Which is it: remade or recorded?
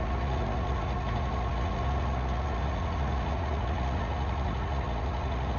remade